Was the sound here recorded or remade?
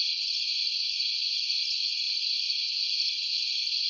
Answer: recorded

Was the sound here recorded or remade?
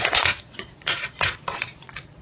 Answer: remade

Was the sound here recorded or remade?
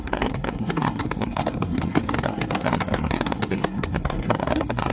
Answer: remade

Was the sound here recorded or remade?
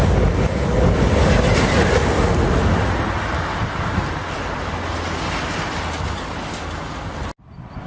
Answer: recorded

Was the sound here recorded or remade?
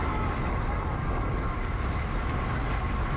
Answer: recorded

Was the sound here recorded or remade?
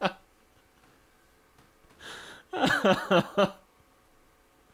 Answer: recorded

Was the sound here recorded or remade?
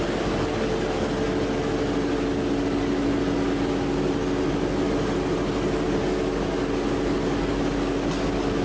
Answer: recorded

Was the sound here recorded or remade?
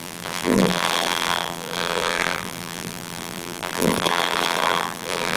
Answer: remade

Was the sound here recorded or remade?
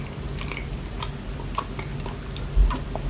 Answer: recorded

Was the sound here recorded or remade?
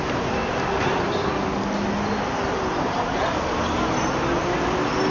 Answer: recorded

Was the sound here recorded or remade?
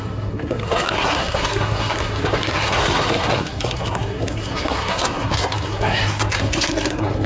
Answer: remade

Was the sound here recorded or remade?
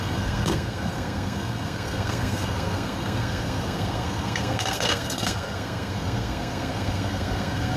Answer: remade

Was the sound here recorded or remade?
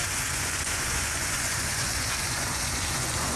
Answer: remade